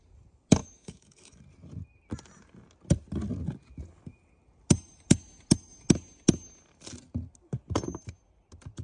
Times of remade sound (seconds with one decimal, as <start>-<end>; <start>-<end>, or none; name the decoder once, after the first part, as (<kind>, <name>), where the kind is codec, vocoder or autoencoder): 0.6-1.4 (autoencoder, DAC-VAE)